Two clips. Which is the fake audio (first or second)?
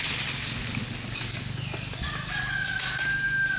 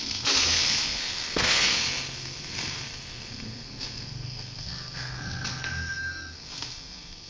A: second